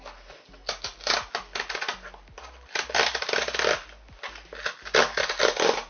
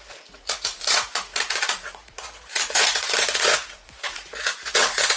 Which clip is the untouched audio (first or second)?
first